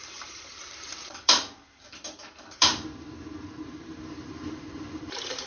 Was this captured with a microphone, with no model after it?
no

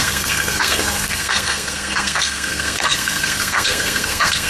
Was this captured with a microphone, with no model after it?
no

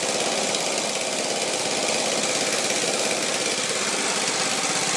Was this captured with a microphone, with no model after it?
yes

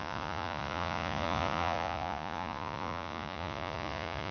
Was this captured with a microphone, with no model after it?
no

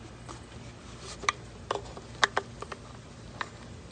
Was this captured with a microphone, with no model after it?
yes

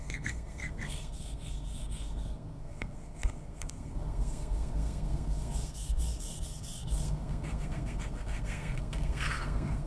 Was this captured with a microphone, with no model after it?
no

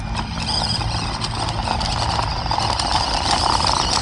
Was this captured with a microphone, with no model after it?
yes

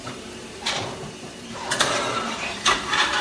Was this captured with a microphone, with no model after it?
no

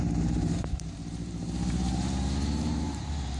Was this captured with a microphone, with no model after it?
no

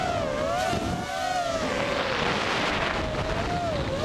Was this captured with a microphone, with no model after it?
yes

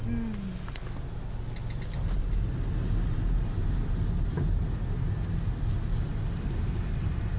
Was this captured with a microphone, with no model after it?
yes